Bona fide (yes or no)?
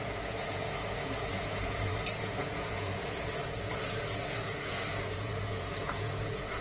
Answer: no